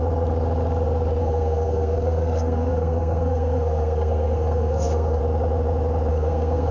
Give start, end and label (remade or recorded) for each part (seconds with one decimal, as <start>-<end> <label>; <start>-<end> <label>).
0.0-1.2 recorded; 1.2-5.2 remade; 5.2-6.1 recorded; 6.1-6.7 remade